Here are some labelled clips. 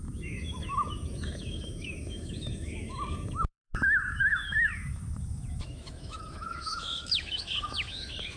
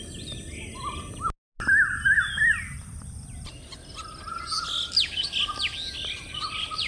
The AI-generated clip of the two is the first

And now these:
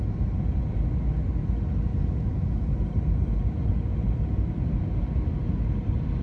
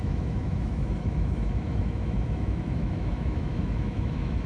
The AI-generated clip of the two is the second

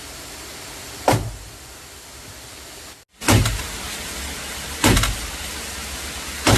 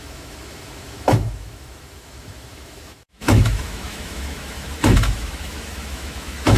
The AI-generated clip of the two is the second